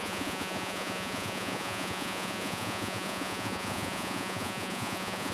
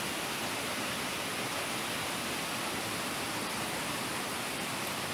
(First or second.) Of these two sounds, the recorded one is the second